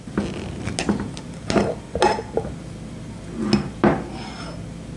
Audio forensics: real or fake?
real